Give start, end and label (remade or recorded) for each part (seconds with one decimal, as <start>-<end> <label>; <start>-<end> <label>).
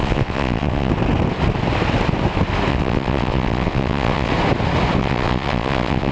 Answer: 0.0-0.9 remade; 0.9-2.7 recorded; 2.7-4.3 remade; 4.3-5.0 recorded; 5.0-6.1 remade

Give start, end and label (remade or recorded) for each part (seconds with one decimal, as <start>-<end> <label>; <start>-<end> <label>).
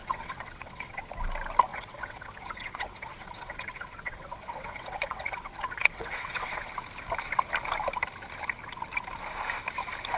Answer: 0.0-1.0 remade; 1.0-1.7 recorded; 1.7-6.7 remade; 6.7-10.2 recorded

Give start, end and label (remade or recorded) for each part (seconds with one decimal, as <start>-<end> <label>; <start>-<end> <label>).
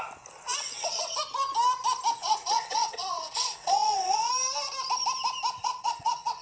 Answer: 0.0-0.5 recorded; 0.5-1.2 remade; 1.2-2.2 recorded; 2.2-4.3 remade; 4.3-5.6 recorded; 5.6-6.4 remade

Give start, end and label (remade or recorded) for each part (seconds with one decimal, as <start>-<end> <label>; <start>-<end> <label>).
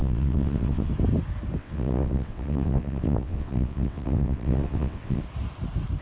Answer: 0.0-0.9 remade; 0.9-1.6 recorded; 1.6-5.2 remade; 5.2-6.0 recorded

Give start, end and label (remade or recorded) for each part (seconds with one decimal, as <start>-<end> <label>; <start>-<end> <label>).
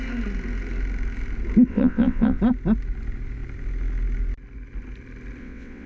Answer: 0.0-1.7 recorded; 1.7-2.4 remade; 2.4-5.4 recorded; 5.4-5.9 remade